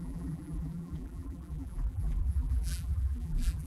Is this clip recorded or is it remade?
remade